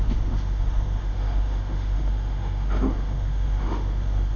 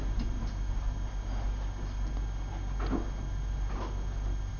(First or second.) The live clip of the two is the second